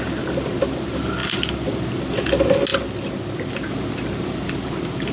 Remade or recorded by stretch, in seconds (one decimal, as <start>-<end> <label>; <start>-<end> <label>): 0.0-5.1 recorded